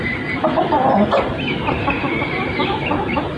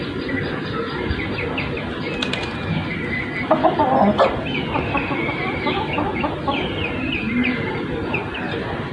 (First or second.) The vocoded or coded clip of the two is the first